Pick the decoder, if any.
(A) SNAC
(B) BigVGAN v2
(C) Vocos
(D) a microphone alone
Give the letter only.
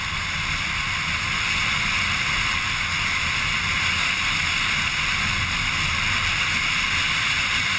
D